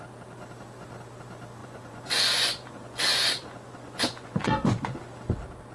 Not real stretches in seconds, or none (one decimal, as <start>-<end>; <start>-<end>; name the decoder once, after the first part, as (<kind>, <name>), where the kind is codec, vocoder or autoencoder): 1.6-5.0 (vocoder, Vocos)